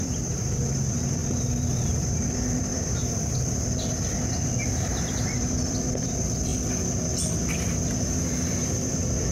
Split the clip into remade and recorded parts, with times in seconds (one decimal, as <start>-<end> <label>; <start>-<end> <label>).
0.0-1.2 remade; 1.2-1.9 recorded; 1.9-6.5 remade; 6.5-7.5 recorded; 7.5-9.3 remade